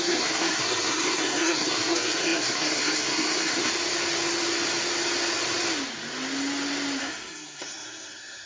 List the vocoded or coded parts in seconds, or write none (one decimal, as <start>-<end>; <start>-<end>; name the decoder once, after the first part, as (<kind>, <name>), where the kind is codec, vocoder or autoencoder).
0.0-3.7 (codec, SNAC); 7.0-8.5